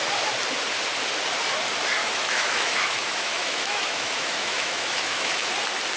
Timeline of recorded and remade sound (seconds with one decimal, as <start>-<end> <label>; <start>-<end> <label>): 0.0-2.0 recorded; 2.0-5.5 remade; 5.5-6.0 recorded